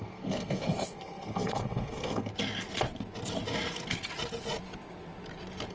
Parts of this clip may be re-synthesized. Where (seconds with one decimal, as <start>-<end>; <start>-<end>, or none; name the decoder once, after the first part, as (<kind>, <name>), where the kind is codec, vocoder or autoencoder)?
0.0-2.3 (codec, SNAC)